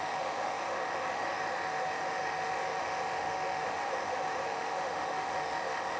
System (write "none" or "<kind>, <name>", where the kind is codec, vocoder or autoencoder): autoencoder, DAC-VAE